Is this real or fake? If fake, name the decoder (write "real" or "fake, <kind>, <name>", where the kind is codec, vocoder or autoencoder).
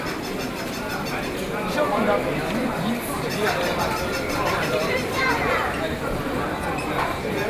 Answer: real